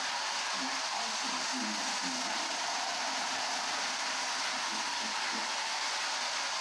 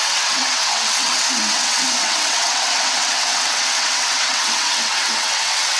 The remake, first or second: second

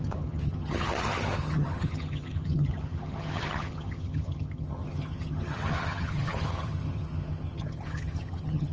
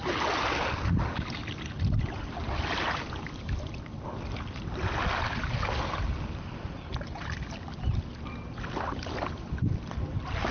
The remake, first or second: first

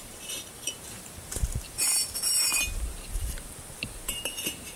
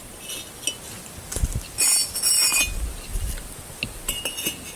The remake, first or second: first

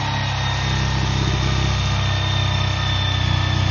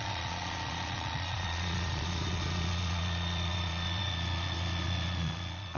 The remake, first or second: second